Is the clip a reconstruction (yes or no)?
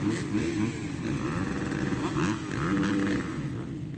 no